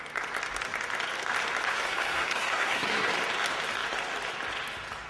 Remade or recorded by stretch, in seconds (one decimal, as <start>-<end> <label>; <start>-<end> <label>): 0.0-1.7 recorded; 1.7-3.1 remade; 3.1-5.1 recorded